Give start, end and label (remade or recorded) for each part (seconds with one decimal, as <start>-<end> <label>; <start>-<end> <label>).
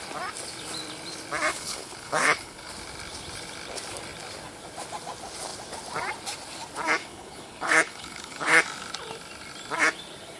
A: 0.0-1.5 recorded; 1.5-2.7 remade; 2.7-7.0 recorded; 7.0-8.6 remade; 8.6-10.4 recorded